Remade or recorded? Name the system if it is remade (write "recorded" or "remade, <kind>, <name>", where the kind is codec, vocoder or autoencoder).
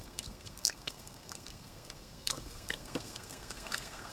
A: remade, codec, SNAC